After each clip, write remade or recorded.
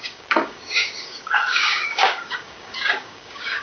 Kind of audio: remade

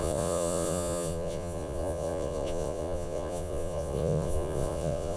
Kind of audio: remade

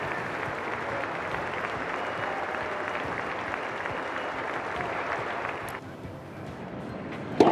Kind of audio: recorded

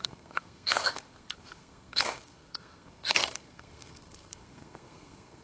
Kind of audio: remade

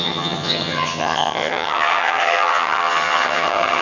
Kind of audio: remade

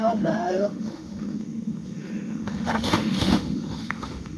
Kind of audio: remade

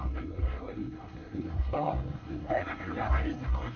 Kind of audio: remade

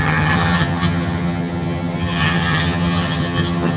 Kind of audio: remade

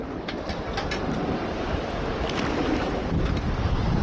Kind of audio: recorded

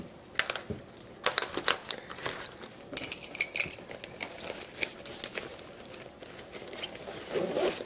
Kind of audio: recorded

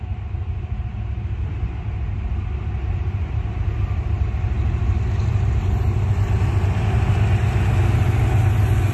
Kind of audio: recorded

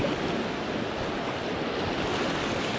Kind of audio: recorded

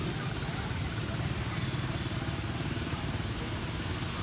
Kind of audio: recorded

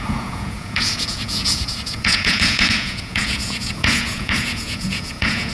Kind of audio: remade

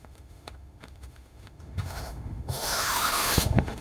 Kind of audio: remade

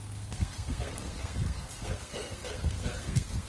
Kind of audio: remade